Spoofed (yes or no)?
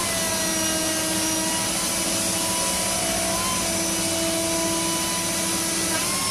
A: no